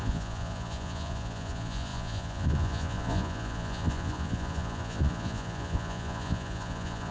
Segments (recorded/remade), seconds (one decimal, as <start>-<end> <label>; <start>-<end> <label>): 0.0-7.1 remade